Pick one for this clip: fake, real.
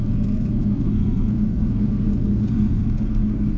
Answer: fake